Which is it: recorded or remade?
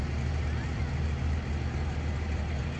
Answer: recorded